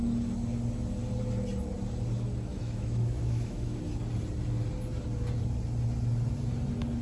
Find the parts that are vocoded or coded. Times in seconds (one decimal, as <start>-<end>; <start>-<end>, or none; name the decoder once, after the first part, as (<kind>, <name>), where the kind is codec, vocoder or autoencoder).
2.5-3.8 (autoencoder, DAC-VAE)